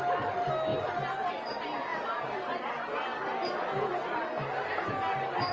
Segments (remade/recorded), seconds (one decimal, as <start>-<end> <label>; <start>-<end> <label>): 0.0-1.9 recorded; 1.9-2.7 remade; 2.7-5.5 recorded